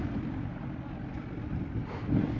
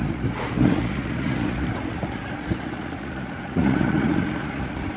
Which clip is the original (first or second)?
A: first